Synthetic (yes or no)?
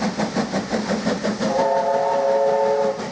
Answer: no